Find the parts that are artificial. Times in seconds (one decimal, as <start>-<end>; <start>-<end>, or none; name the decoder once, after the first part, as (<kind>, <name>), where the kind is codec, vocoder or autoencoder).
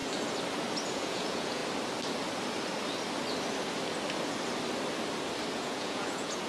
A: 0.9-1.6 (vocoder, Vocos); 5.5-6.5